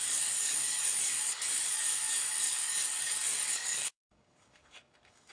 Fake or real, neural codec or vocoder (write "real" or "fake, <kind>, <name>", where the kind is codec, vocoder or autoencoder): fake, codec, DAC